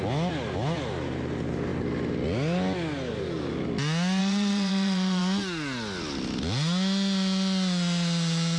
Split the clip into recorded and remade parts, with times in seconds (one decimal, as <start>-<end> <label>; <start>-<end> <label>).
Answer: 0.0-4.2 recorded; 4.2-5.2 remade; 5.2-8.6 recorded

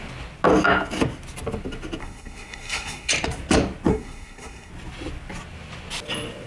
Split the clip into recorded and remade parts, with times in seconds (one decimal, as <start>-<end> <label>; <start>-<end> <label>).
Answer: 0.0-2.0 recorded; 2.0-3.1 remade; 3.1-3.9 recorded; 3.9-4.7 remade; 4.7-6.5 recorded